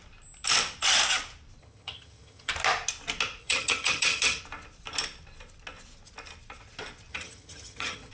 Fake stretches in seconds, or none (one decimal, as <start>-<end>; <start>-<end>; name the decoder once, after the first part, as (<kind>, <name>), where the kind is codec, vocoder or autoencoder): 1.6-2.5 (vocoder, HiFi-GAN); 3.4-4.4; 7.1-8.1